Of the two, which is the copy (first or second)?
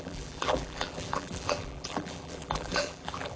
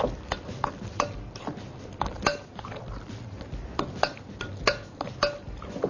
first